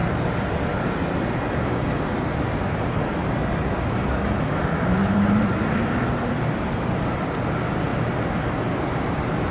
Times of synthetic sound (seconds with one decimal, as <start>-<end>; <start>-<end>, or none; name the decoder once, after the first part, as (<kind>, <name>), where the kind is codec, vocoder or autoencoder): 5.0-5.6 (vocoder, BigVGAN v2)